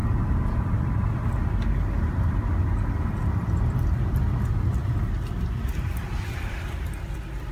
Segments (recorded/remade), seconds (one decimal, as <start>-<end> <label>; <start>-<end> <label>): 0.0-3.6 recorded; 3.6-4.8 remade; 4.8-6.3 recorded; 6.3-7.5 remade